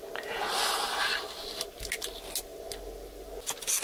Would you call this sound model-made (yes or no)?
no